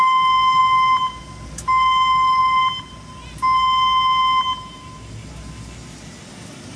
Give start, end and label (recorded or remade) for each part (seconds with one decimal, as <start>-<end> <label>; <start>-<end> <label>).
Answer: 0.0-6.8 recorded